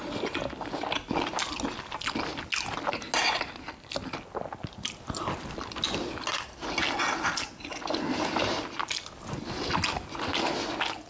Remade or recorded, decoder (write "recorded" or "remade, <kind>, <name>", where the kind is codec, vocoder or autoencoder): recorded